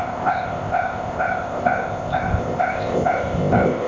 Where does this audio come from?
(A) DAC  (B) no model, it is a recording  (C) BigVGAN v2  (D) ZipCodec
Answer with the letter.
D